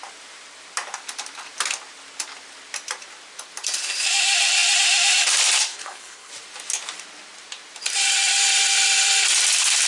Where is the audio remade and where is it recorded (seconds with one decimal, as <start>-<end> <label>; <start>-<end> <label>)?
0.0-5.7 recorded; 5.7-6.3 remade; 6.3-9.9 recorded